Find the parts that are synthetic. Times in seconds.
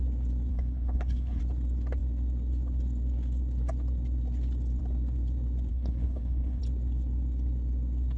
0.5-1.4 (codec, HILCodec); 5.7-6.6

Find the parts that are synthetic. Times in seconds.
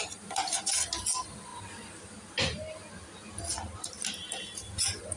none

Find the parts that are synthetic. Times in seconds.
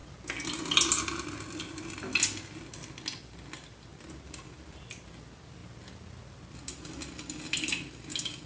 none